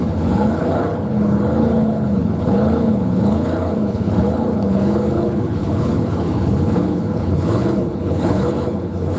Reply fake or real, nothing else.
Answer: fake